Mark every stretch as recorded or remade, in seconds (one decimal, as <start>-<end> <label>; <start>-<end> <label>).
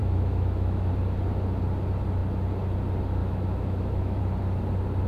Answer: 0.0-0.9 remade; 0.9-3.2 recorded; 3.2-4.2 remade; 4.2-5.1 recorded